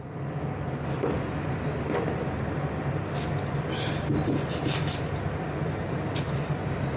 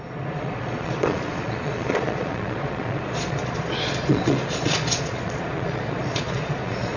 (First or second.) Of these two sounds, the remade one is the second